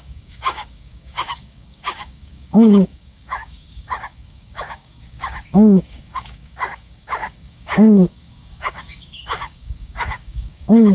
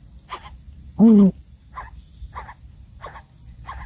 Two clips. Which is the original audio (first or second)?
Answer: second